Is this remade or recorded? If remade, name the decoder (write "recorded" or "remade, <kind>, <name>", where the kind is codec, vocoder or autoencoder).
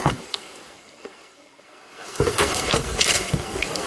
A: remade, codec, SNAC